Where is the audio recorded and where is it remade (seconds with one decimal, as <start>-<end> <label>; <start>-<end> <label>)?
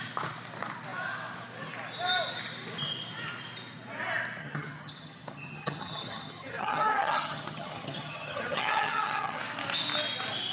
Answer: 0.0-4.4 recorded; 4.4-9.4 remade; 9.4-10.5 recorded